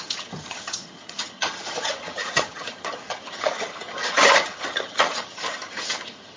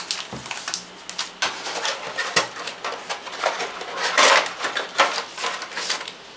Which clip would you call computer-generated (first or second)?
first